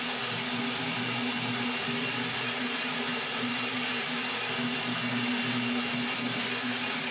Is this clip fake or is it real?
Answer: real